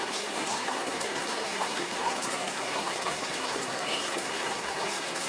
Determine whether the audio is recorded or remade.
remade